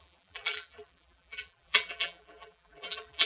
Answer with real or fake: fake